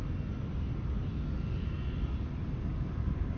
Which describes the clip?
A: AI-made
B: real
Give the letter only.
B